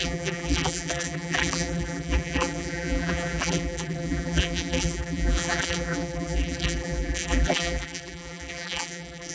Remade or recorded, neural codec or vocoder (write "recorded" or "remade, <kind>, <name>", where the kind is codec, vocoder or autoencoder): remade, vocoder, BigVGAN v2